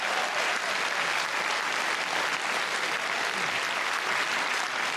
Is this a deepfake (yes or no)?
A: no